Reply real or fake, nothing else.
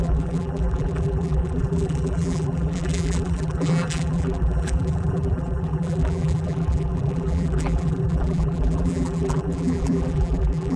fake